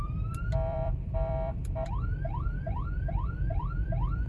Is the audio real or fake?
fake